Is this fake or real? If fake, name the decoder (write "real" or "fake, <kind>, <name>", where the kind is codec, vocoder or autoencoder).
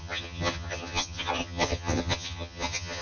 fake, vocoder, HiFi-GAN